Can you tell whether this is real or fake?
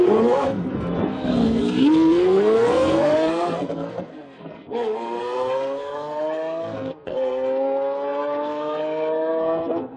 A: fake